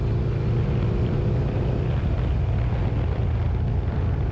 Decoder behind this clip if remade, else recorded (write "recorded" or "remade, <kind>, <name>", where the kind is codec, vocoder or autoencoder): recorded